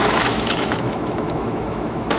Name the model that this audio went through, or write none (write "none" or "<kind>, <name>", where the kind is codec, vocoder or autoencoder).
autoencoder, DAC-VAE